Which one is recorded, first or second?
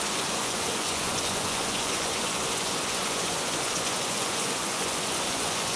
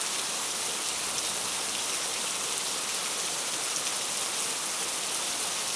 second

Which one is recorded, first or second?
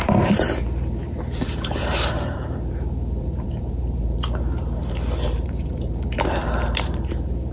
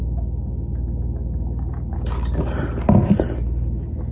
second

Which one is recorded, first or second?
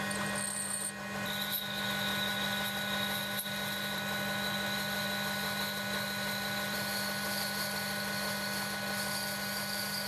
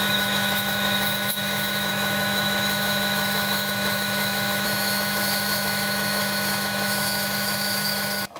first